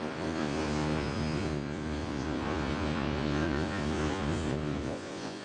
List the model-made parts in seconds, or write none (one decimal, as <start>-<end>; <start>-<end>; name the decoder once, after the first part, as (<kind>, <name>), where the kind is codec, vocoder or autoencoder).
0.0-5.4 (vocoder, Vocos)